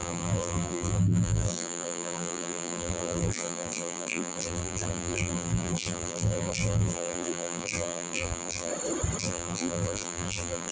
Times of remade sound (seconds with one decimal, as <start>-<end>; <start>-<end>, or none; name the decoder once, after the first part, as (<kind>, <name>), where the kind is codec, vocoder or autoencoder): 0.0-8.7 (vocoder, BigVGAN v2); 9.2-10.7